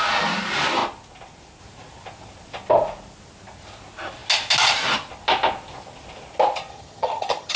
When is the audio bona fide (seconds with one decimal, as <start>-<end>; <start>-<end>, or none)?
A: 0.0-6.7